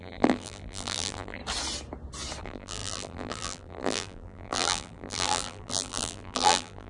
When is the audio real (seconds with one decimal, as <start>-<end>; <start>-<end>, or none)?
1.4-2.4